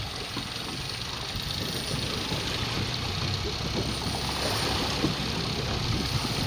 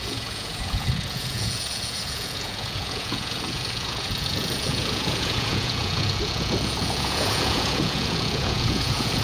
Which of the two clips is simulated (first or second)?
second